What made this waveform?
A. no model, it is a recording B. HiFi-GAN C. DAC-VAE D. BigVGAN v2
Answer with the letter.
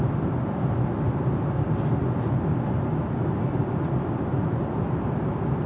A